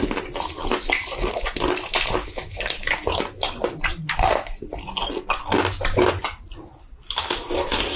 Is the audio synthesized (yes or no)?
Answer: no